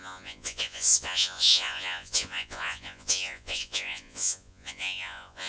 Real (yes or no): no